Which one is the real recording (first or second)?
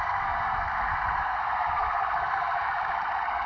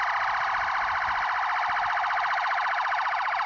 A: second